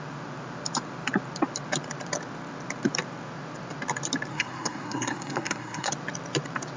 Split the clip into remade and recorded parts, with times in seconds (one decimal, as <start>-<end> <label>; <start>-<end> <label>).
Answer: 0.0-4.3 recorded; 4.3-5.9 remade; 5.9-6.8 recorded